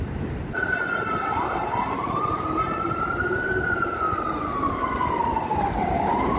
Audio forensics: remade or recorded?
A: remade